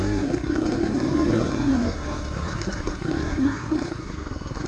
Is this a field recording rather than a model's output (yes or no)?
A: no